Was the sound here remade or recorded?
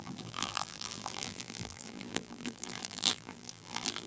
remade